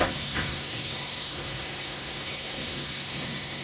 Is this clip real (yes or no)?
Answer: no